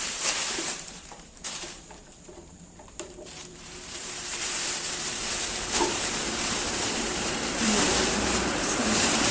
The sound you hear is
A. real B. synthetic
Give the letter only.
B